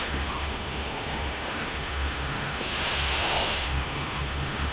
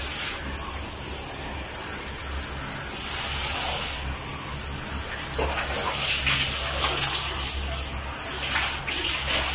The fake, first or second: first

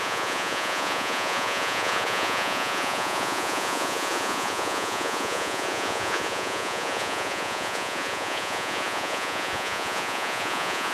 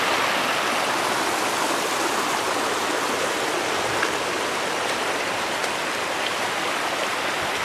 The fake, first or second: first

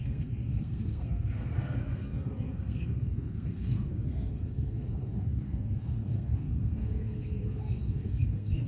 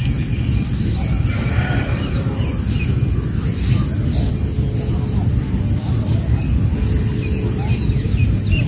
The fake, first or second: first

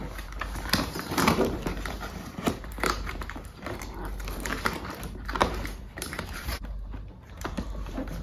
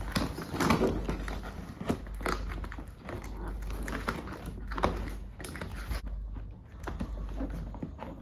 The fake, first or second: first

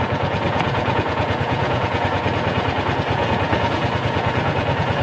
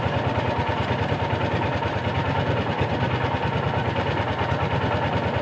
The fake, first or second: first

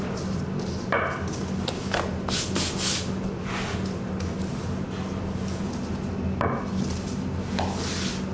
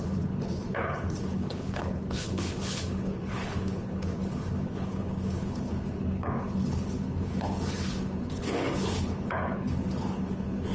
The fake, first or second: second